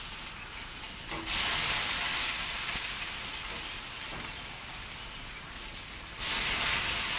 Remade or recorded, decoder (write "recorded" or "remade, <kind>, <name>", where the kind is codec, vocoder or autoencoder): recorded